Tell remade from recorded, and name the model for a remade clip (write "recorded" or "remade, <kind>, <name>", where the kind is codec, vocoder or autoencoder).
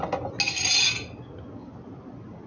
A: recorded